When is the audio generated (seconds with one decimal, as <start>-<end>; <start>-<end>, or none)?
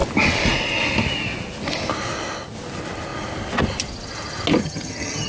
4.6-5.3